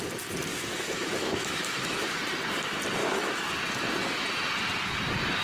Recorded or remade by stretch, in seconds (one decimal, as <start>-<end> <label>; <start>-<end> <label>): 0.0-0.5 recorded; 0.5-2.2 remade; 2.2-3.0 recorded; 3.0-3.5 remade; 3.5-5.4 recorded